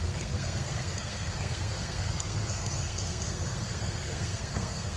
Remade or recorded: remade